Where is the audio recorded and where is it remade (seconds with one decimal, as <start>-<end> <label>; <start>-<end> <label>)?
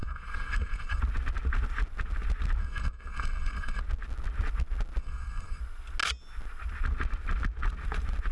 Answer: 0.0-1.0 remade; 1.0-2.6 recorded; 2.6-3.8 remade; 3.8-5.0 recorded; 5.0-5.6 remade; 5.6-8.3 recorded